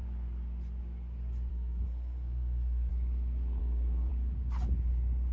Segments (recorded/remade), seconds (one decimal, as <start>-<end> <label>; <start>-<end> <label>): 0.0-1.5 recorded; 1.5-2.9 remade; 2.9-3.6 recorded; 3.6-4.1 remade; 4.1-5.3 recorded